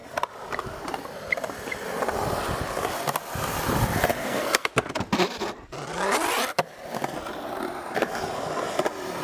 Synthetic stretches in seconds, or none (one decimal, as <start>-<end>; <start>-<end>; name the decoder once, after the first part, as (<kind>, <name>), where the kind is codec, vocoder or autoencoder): 4.2-4.7 (codec, SNAC)